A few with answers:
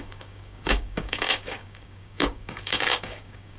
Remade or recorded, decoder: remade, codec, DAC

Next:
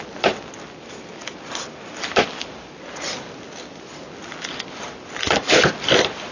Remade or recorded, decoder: recorded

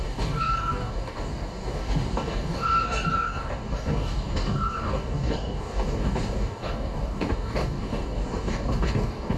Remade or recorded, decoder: remade, codec, DAC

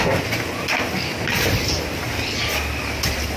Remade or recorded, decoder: recorded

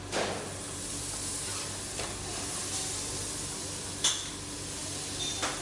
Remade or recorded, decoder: recorded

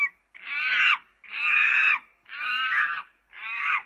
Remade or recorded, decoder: remade, codec, DAC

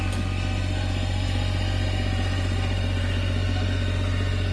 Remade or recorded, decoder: recorded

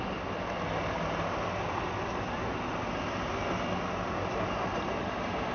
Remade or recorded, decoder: recorded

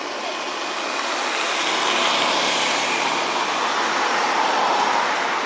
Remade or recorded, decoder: recorded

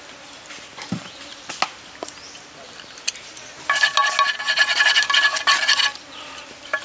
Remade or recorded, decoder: recorded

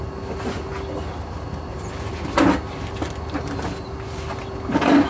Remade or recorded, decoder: recorded